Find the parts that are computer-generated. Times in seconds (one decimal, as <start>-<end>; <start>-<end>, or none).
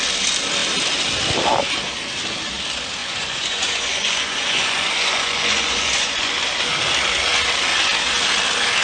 3.0-6.3